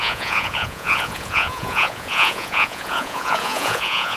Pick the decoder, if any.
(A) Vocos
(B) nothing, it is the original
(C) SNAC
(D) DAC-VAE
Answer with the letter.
A